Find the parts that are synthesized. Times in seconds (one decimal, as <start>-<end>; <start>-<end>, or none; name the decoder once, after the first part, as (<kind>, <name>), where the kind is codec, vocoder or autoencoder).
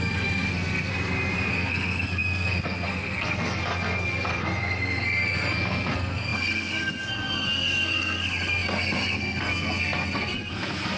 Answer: 0.0-0.9 (codec, SNAC); 1.5-11.0